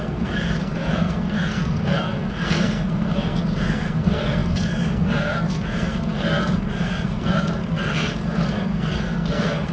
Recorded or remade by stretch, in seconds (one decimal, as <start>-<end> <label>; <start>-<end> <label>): 0.0-9.7 remade